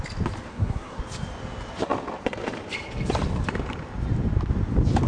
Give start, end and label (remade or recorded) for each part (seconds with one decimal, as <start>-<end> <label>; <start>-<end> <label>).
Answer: 0.0-0.5 recorded; 0.5-1.0 remade; 1.0-5.1 recorded